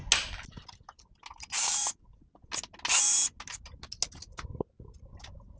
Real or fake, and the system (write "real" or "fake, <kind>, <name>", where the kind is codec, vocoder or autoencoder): real